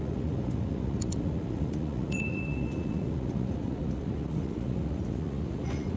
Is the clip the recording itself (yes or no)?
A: no